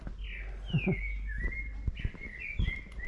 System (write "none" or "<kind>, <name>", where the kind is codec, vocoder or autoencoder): none